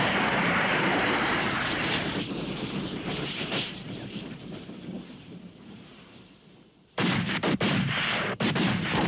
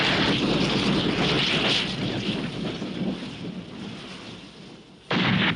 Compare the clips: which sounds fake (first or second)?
first